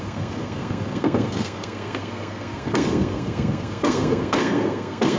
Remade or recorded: remade